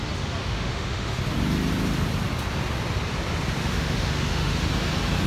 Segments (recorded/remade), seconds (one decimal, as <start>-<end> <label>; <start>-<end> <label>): 0.0-0.4 recorded; 0.4-1.2 remade; 1.2-3.6 recorded; 3.6-4.7 remade; 4.7-5.3 recorded